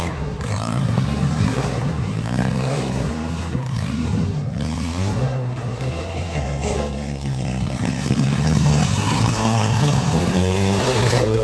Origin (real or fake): fake